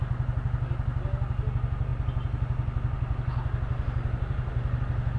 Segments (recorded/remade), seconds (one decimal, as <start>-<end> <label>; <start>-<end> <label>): 0.0-5.2 recorded